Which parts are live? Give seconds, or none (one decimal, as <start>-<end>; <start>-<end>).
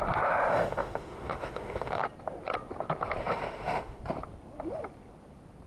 0.0-0.5; 2.0-3.2; 4.0-5.7